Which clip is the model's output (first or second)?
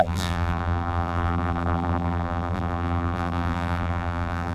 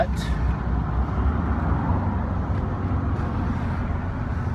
first